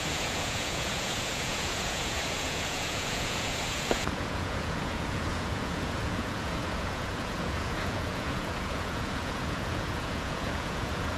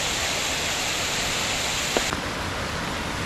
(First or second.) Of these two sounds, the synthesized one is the first